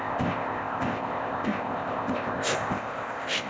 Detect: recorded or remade remade